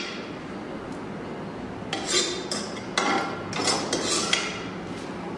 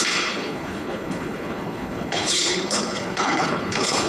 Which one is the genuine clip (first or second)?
first